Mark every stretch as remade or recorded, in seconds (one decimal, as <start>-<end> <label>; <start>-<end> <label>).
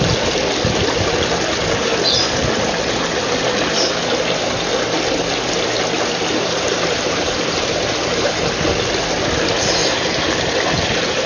0.0-6.3 recorded; 6.3-8.5 remade; 8.5-9.8 recorded; 9.8-10.4 remade; 10.4-11.3 recorded